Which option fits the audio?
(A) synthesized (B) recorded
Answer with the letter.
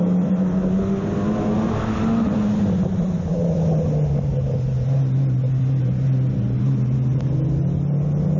B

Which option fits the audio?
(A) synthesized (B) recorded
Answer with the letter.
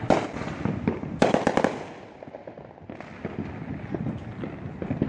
B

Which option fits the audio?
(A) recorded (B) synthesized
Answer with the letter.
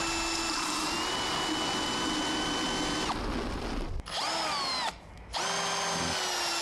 A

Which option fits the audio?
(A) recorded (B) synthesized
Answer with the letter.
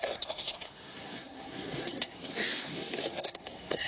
B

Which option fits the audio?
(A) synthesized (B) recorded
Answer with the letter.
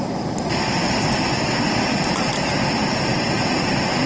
B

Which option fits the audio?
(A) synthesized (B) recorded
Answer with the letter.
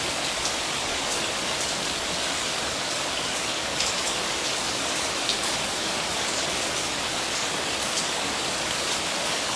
A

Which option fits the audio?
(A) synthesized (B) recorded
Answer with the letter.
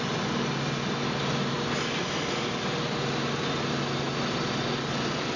B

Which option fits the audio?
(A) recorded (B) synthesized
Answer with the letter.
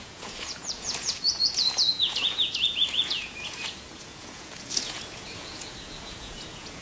B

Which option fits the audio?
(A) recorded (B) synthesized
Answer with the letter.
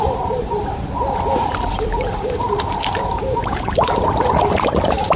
B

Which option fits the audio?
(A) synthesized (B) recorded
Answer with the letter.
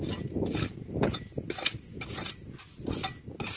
B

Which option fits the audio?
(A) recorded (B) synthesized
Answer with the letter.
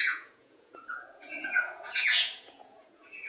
B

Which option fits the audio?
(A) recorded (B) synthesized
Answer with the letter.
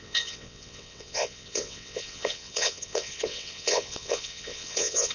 B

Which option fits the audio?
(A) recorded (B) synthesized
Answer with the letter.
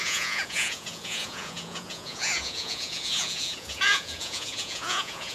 B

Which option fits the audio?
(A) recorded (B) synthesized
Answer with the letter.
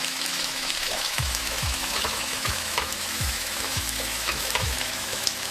B